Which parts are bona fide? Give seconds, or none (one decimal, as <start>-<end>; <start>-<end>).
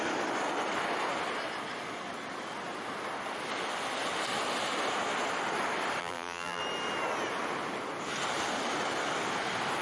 0.0-6.0; 6.6-9.8